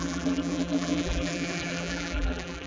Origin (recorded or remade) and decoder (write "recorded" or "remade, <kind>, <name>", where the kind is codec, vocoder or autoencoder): remade, vocoder, BigVGAN v2